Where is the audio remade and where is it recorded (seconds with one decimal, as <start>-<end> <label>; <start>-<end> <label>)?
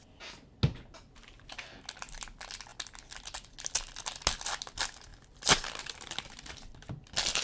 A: 0.0-7.4 recorded